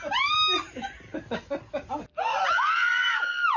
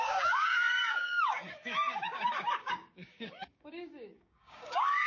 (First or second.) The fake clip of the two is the second